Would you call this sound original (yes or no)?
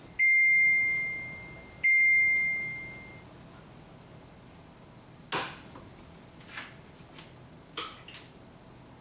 yes